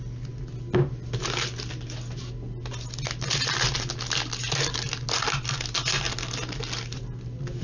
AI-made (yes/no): no